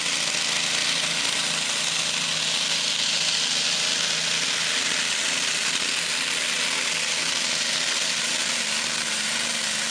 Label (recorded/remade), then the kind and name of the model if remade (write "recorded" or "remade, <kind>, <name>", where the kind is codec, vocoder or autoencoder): recorded